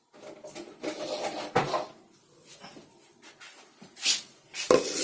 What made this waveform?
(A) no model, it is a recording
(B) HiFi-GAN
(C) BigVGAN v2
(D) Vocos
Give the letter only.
A